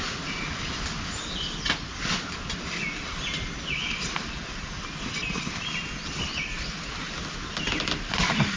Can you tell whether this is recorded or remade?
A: recorded